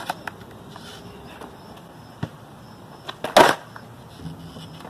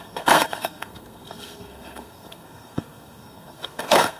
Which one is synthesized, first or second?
second